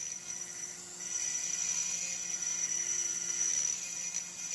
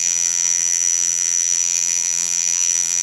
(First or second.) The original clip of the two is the first